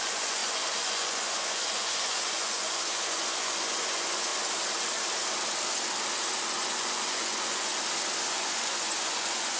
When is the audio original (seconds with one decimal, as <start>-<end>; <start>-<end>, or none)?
4.3-6.5; 7.7-8.2